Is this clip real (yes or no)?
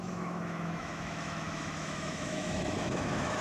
no